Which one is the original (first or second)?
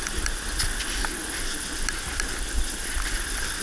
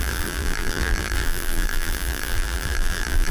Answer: first